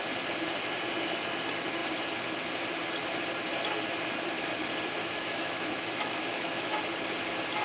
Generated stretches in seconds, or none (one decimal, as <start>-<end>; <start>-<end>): 5.0-6.8